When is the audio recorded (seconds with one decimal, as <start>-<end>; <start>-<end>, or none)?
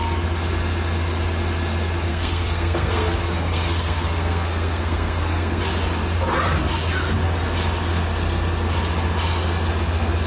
0.0-2.1; 5.6-10.3